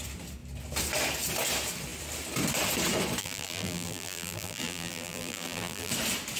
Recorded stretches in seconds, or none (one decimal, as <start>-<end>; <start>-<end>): 0.0-3.2; 5.9-6.4